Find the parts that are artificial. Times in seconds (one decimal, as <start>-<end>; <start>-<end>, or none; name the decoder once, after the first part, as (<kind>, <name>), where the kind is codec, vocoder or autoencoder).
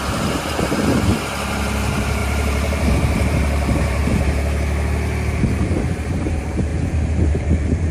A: 0.0-4.0 (vocoder, BigVGAN v2); 5.6-6.7; 7.3-7.9